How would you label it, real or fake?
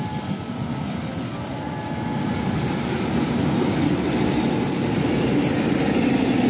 real